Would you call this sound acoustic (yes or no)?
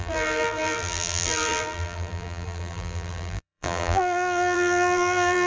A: no